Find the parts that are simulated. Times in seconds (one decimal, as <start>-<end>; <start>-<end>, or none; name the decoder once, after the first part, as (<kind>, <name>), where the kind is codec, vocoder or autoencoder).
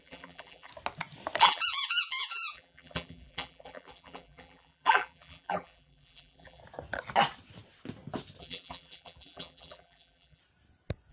0.0-0.7 (vocoder, BigVGAN v2); 1.4-6.6; 8.4-10.4